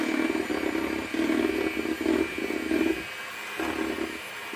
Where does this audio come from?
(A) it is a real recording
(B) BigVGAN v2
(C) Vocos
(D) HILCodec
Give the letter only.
A